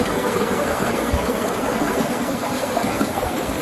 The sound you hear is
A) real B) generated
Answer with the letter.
B